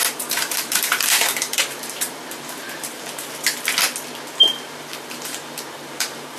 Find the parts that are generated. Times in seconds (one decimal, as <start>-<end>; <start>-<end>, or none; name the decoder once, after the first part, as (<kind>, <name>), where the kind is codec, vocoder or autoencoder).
0.0-3.3 (vocoder, BigVGAN v2); 4.4-6.4